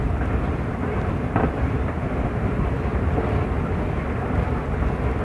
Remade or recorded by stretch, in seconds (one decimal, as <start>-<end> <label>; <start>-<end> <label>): 0.0-3.1 remade; 3.1-5.2 recorded